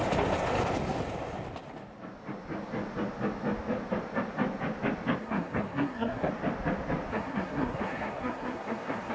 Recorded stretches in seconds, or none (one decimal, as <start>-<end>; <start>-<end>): 0.0-5.2; 6.3-7.1